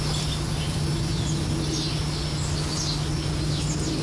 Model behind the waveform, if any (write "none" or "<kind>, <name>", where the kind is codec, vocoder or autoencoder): none